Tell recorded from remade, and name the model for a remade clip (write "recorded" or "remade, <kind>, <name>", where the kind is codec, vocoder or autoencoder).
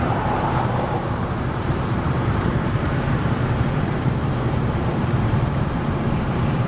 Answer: remade, vocoder, BigVGAN v2